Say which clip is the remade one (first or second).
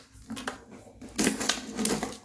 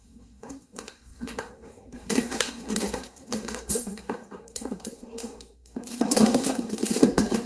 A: second